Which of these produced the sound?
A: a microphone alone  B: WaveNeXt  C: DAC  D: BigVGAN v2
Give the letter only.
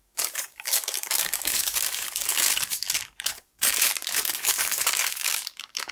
C